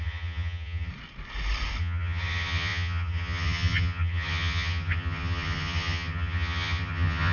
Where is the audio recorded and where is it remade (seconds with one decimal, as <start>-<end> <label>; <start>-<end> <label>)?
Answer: 0.0-0.9 remade; 0.9-1.8 recorded; 1.8-7.3 remade